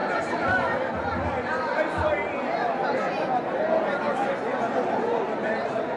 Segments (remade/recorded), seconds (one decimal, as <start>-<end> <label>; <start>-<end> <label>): 0.0-6.0 recorded